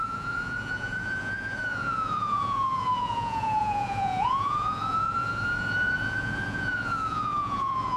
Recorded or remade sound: remade